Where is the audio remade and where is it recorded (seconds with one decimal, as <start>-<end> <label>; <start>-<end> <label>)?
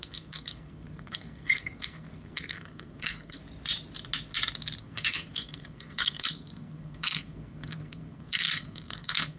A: 0.0-3.4 remade; 3.4-4.8 recorded; 4.8-9.4 remade